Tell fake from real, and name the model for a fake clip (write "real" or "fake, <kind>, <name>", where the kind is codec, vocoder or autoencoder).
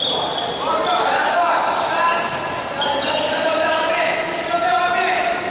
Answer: real